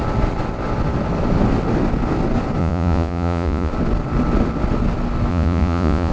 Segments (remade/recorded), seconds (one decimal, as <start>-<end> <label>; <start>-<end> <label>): 0.0-2.6 recorded; 2.6-3.7 remade; 3.7-5.3 recorded; 5.3-6.1 remade